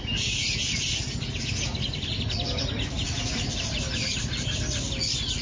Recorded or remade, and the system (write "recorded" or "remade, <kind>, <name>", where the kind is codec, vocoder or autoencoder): recorded